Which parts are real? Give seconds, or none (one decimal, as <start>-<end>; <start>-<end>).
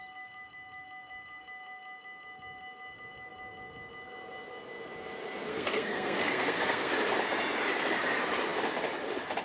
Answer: 0.0-5.5; 6.9-9.4